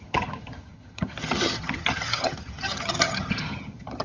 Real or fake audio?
fake